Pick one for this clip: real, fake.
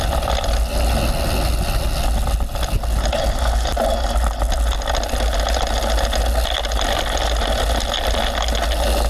real